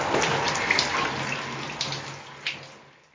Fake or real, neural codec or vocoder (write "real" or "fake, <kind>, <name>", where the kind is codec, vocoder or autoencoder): real